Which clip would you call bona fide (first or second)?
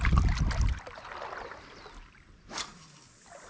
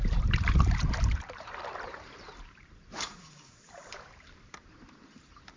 first